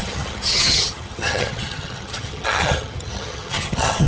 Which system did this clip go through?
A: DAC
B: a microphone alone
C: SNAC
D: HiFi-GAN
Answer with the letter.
D